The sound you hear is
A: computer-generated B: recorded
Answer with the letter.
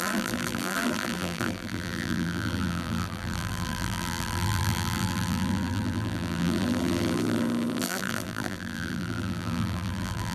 A